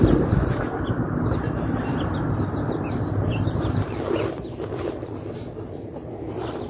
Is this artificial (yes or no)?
no